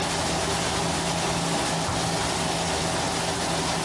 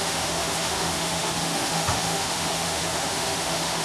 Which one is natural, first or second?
first